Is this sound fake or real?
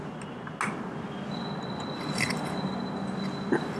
real